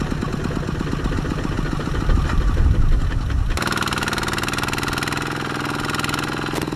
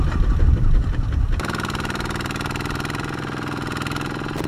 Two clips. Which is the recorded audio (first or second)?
first